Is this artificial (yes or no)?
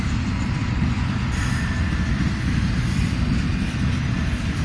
no